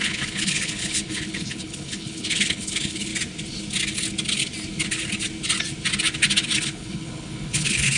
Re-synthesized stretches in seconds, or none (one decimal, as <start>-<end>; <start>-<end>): 0.0-3.1; 6.6-8.0